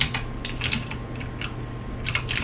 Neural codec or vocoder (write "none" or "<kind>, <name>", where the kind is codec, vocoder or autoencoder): none